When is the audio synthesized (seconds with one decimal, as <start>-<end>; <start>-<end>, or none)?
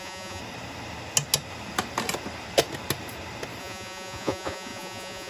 0.0-0.4; 3.6-5.3